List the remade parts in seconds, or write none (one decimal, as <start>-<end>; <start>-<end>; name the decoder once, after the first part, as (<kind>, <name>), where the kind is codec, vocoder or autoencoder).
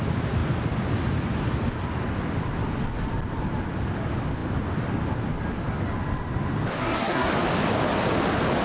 6.8-7.3 (codec, SNAC)